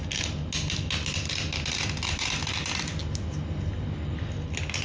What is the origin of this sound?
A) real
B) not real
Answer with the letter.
A